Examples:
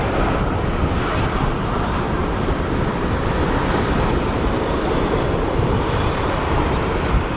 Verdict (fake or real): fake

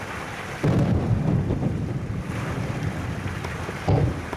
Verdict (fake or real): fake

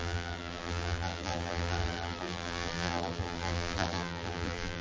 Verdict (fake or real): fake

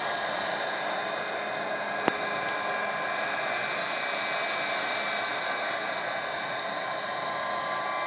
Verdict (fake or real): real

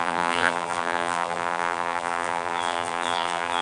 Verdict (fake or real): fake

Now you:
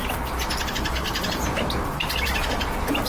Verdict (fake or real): fake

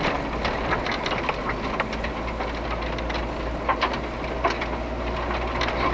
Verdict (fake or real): real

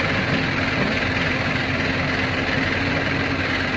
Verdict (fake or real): real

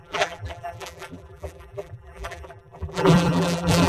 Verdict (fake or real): fake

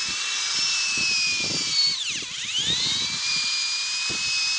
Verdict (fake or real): fake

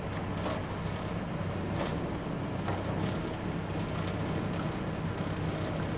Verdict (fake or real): real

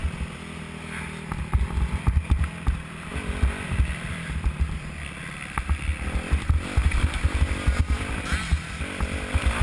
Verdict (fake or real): fake